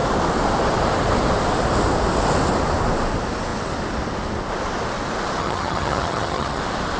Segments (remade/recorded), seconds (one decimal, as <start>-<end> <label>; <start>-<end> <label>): 0.0-5.4 recorded; 5.4-6.6 remade; 6.6-7.0 recorded